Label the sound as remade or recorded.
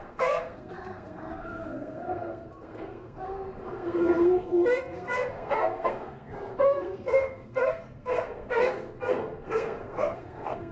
remade